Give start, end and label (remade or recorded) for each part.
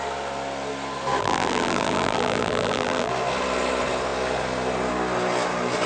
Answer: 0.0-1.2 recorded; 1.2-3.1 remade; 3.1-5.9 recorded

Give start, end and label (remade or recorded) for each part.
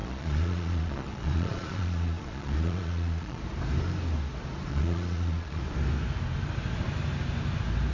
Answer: 0.0-3.4 remade; 3.4-4.7 recorded; 4.7-5.6 remade; 5.6-7.9 recorded